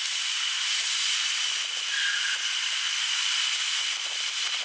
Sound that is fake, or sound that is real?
real